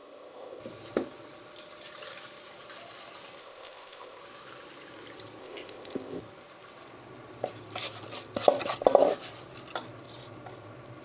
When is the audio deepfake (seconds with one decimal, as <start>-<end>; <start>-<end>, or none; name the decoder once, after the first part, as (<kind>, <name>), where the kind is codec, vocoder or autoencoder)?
0.0-0.6 (codec, ZipCodec); 3.4-4.2; 5.4-6.2